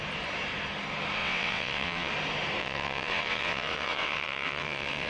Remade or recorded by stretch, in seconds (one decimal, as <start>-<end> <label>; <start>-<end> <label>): 0.0-1.2 recorded; 1.2-2.1 remade; 2.1-2.6 recorded; 2.6-5.1 remade